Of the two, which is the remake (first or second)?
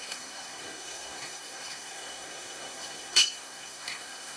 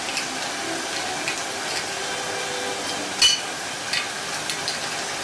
first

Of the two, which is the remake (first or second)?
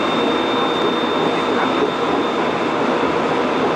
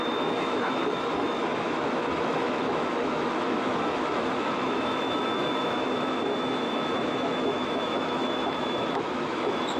second